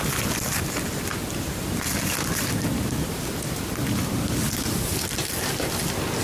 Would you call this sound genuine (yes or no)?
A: yes